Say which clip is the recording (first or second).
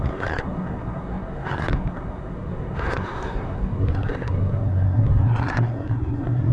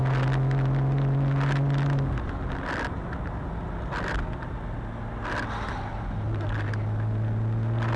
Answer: second